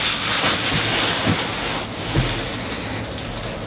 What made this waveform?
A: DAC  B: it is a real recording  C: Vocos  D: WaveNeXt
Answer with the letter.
B